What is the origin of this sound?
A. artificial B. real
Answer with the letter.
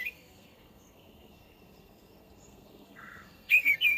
A